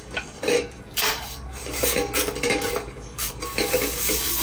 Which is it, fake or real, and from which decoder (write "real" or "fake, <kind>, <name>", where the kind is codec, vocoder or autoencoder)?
fake, codec, DAC